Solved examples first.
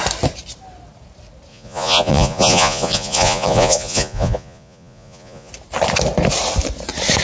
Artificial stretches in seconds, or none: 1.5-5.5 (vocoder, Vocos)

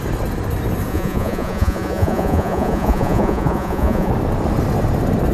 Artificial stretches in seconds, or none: 0.9-4.1 (vocoder, Vocos)

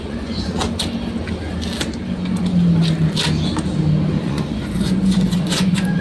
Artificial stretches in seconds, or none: 0.0-0.6 (vocoder, Vocos); 4.2-6.0

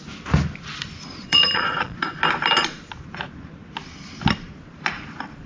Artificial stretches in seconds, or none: 1.1-2.0 (vocoder, Vocos)